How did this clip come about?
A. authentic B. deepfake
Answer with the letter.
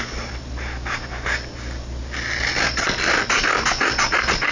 A